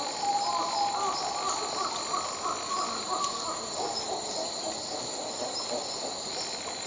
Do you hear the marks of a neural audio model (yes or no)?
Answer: no